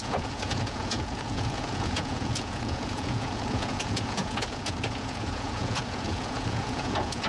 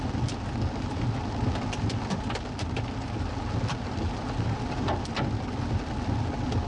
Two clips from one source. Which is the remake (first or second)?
first